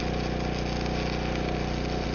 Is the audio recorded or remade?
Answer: recorded